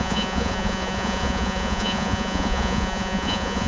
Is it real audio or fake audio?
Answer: fake